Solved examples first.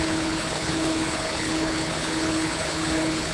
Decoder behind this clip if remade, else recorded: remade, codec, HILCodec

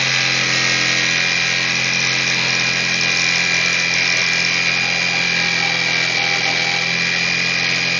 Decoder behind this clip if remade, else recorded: recorded